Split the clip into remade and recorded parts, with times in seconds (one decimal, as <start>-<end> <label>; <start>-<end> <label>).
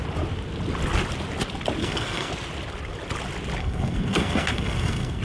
0.0-1.8 recorded; 1.8-2.3 remade; 2.3-3.6 recorded; 3.6-5.2 remade